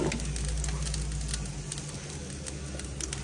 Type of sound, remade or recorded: recorded